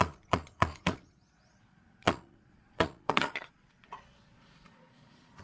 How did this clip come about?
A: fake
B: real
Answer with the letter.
A